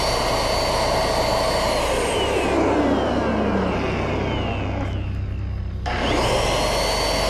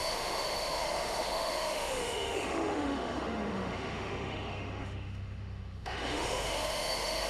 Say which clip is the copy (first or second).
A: second